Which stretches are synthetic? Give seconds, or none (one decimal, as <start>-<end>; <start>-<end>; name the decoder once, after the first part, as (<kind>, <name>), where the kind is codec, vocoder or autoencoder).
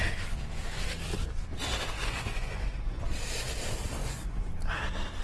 2.0-3.0 (vocoder, Vocos); 4.0-4.5